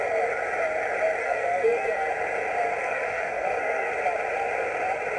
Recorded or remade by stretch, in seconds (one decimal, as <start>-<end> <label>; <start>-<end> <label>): 0.0-1.2 recorded; 1.2-2.1 remade; 2.1-2.8 recorded; 2.8-3.9 remade; 3.9-5.2 recorded